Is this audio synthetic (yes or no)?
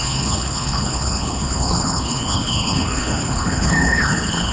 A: yes